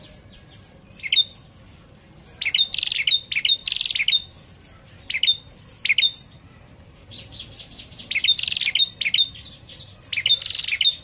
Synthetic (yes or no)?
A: no